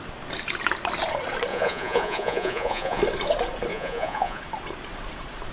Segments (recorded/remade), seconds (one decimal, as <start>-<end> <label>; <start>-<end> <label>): 0.0-1.5 recorded; 1.5-3.0 remade; 3.0-3.7 recorded; 3.7-4.4 remade; 4.4-5.5 recorded